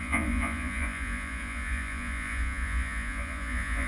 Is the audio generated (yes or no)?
yes